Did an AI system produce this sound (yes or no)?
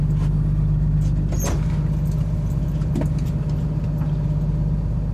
no